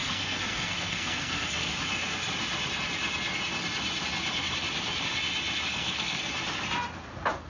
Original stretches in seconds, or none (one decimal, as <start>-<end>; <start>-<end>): 1.7-5.7; 6.3-7.5